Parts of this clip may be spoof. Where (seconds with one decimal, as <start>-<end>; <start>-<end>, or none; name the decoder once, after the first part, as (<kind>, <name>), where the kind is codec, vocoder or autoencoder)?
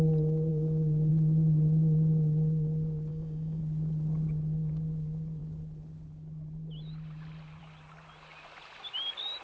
3.1-3.6 (codec, DAC)